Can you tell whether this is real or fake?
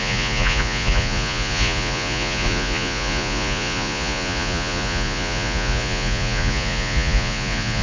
fake